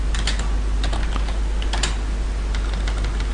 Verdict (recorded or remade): recorded